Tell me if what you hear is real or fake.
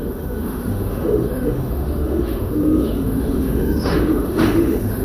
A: fake